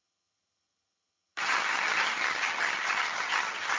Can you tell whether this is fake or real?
fake